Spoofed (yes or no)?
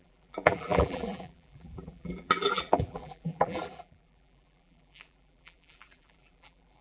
yes